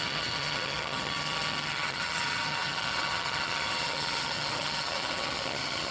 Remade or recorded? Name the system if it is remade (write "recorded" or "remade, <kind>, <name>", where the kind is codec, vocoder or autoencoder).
remade, vocoder, HiFi-GAN